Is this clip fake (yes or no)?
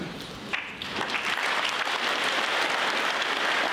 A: no